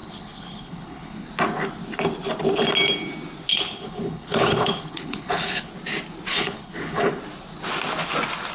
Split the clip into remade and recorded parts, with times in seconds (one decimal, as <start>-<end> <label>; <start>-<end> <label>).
0.0-1.3 remade; 1.3-3.5 recorded; 3.5-5.7 remade; 5.7-6.3 recorded; 6.3-7.2 remade; 7.2-8.5 recorded